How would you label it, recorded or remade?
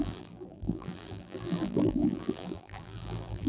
remade